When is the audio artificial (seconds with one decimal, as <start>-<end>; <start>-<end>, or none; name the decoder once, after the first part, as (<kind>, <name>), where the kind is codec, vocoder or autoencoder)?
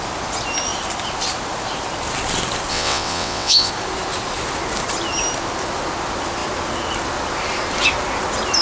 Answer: 2.7-3.7 (vocoder, WaveNeXt)